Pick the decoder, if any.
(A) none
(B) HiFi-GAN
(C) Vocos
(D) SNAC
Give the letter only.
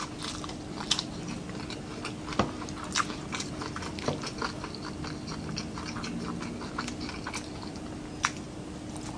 A